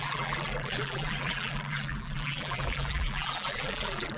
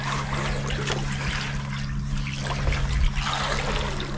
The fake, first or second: first